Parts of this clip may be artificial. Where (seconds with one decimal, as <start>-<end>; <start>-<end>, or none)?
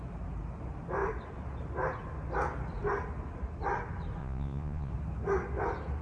4.2-4.9